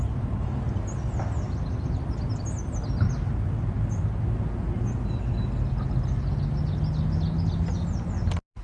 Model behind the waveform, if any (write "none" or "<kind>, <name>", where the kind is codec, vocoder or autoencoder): none